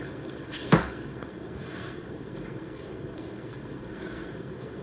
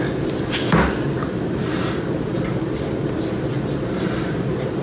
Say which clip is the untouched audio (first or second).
second